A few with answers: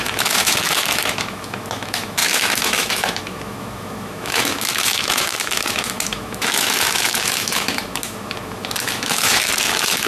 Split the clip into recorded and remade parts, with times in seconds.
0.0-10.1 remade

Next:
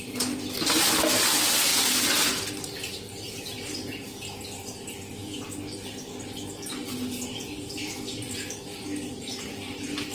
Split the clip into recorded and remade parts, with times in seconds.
0.0-1.7 remade; 1.7-2.6 recorded; 2.6-10.1 remade

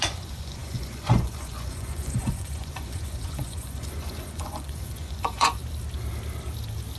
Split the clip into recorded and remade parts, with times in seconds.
0.0-5.6 remade; 5.6-7.0 recorded

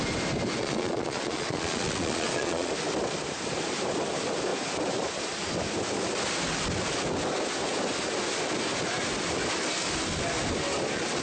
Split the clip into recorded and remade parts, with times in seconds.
0.0-0.6 recorded; 0.6-2.7 remade; 2.7-11.2 recorded

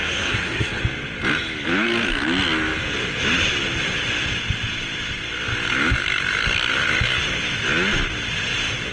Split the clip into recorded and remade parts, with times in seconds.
0.0-0.8 remade; 0.8-8.9 recorded